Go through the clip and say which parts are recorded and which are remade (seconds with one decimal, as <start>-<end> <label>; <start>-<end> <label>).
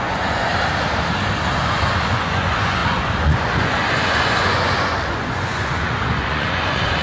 0.0-0.5 remade; 0.5-1.6 recorded; 1.6-7.0 remade